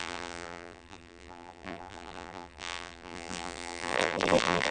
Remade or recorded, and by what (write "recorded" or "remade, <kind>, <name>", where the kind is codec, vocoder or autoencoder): remade, vocoder, BigVGAN v2